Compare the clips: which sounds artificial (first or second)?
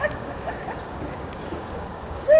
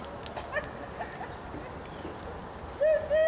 first